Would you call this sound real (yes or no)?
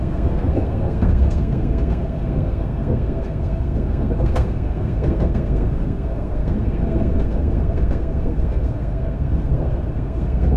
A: no